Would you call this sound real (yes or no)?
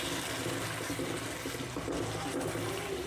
yes